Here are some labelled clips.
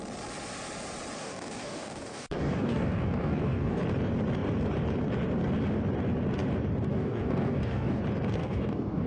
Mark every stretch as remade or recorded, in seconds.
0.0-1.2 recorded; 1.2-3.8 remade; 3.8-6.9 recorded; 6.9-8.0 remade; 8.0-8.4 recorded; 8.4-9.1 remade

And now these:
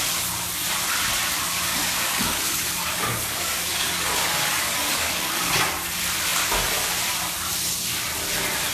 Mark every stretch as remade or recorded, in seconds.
0.0-1.7 recorded; 1.7-5.5 remade; 5.5-8.7 recorded

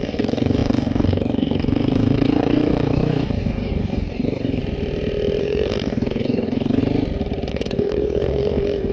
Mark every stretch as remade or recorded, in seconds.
0.0-4.6 remade; 4.6-5.4 recorded; 5.4-6.8 remade; 6.8-7.5 recorded; 7.5-8.9 remade

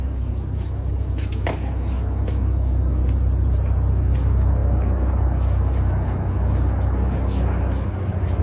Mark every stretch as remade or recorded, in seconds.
0.0-3.0 remade; 3.0-3.9 recorded; 3.9-8.4 remade

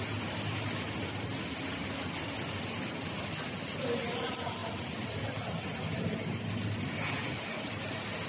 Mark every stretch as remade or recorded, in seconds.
0.0-8.3 recorded

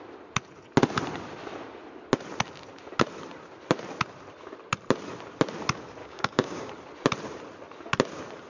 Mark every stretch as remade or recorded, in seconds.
0.0-6.0 recorded; 6.0-6.7 remade; 6.7-8.5 recorded